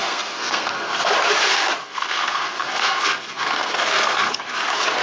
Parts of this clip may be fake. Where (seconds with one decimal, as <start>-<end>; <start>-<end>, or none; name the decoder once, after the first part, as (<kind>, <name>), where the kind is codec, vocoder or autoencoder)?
0.0-1.1 (codec, SNAC); 1.8-4.3